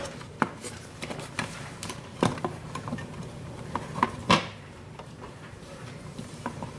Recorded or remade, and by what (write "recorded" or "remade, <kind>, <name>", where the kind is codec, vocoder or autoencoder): remade, vocoder, BigVGAN v2